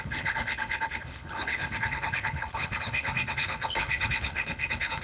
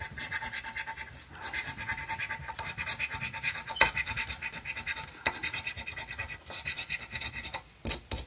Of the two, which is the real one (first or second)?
second